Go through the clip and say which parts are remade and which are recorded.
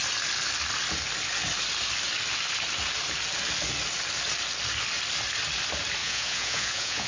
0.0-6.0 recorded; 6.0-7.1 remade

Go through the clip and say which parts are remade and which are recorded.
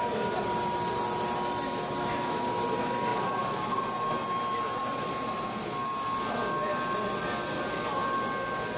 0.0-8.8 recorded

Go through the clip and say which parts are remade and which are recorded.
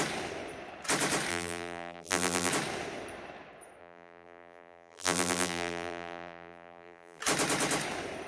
0.0-1.3 recorded; 1.3-2.5 remade; 2.5-3.8 recorded; 3.8-7.2 remade; 7.2-8.3 recorded